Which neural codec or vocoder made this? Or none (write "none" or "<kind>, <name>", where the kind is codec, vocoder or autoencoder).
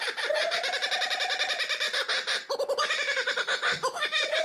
none